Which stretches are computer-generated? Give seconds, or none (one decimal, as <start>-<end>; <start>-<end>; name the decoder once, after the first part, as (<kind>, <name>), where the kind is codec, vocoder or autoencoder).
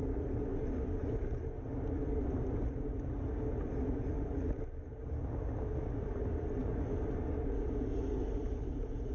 none